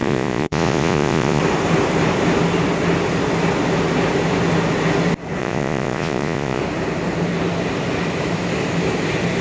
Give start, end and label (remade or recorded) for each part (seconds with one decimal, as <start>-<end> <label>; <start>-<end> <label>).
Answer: 0.0-1.4 remade; 1.4-5.4 recorded; 5.4-6.6 remade; 6.6-9.4 recorded